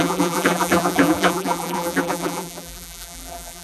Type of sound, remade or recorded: remade